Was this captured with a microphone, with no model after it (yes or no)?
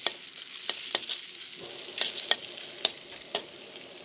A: yes